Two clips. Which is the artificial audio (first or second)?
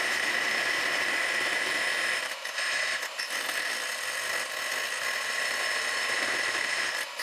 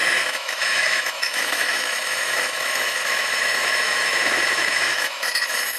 second